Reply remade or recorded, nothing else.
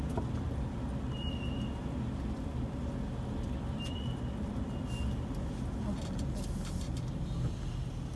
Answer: recorded